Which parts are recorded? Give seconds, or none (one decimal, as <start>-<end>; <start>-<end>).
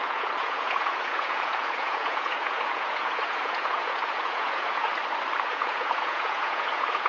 4.9-5.5